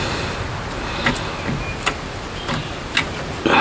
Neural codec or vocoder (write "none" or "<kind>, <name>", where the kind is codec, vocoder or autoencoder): none